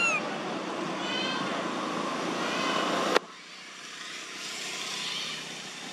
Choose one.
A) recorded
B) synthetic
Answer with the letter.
A